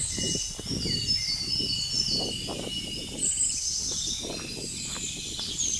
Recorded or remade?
recorded